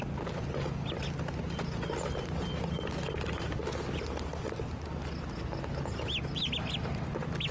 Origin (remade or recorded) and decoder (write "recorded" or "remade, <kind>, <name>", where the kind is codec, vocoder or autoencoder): recorded